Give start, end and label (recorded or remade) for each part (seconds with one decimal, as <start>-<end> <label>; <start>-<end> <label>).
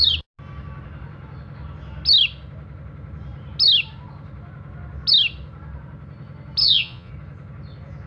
0.0-6.6 recorded; 6.6-7.1 remade; 7.1-8.1 recorded